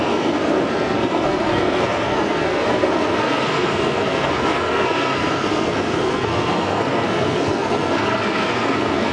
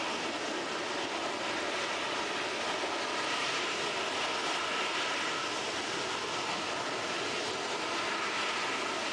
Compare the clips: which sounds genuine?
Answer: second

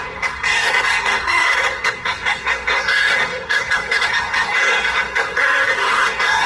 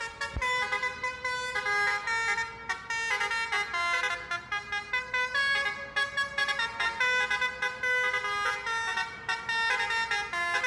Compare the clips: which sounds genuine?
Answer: second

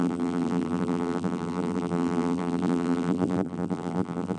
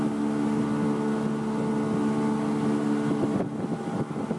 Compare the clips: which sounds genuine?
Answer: second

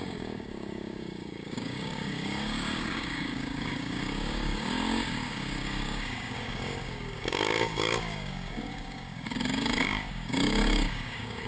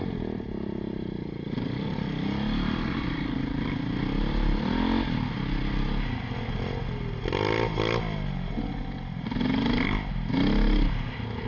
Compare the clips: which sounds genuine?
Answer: second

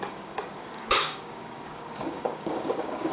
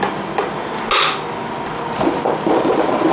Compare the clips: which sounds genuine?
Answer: second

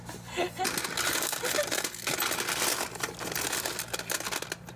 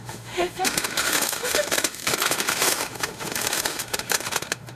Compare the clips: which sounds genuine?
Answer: first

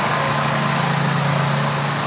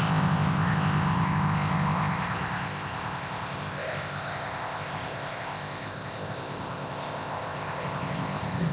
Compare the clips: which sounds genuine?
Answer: first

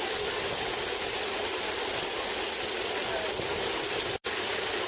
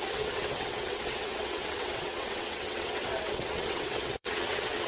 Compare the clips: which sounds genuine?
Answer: first